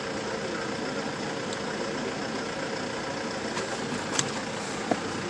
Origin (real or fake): real